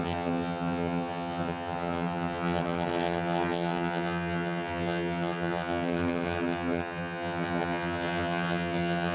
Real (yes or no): no